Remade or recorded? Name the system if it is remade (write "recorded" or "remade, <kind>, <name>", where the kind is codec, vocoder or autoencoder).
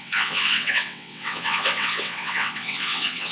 remade, vocoder, WaveNeXt